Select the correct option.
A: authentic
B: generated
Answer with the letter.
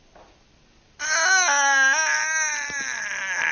A